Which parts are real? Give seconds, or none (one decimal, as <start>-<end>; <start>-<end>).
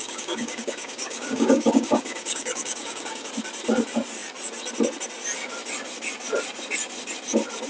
3.3-7.7